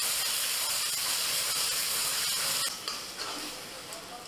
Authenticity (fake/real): real